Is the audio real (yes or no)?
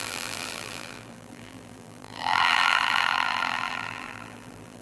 no